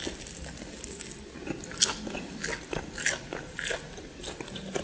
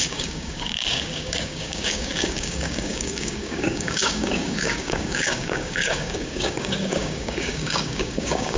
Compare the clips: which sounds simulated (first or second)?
second